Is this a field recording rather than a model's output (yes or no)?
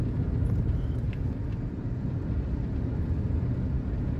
yes